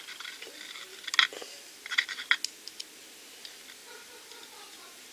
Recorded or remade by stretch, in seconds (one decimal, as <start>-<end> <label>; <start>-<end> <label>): 0.0-1.3 recorded; 1.3-2.1 remade; 2.1-3.8 recorded; 3.8-4.5 remade; 4.5-5.1 recorded